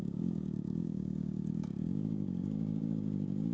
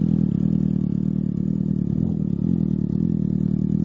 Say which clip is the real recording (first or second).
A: second